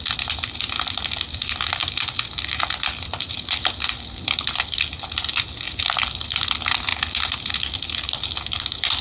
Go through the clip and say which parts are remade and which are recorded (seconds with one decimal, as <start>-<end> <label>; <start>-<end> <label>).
0.0-5.2 remade; 5.2-5.8 recorded; 5.8-6.9 remade; 6.9-7.5 recorded; 7.5-9.0 remade